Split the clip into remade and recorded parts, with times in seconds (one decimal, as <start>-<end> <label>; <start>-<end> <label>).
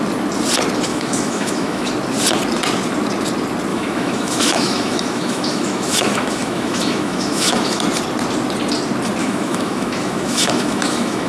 0.0-0.9 recorded; 0.9-1.9 remade; 1.9-3.7 recorded; 3.7-7.8 remade; 7.8-9.2 recorded; 9.2-11.3 remade